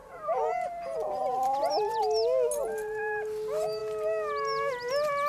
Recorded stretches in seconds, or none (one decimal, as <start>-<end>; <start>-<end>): 0.0-5.3